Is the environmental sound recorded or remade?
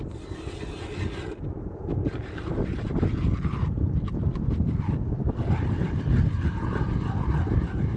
recorded